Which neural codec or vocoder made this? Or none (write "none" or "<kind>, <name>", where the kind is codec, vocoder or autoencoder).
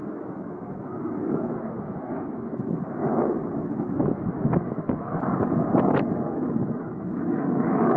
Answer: autoencoder, DAC-VAE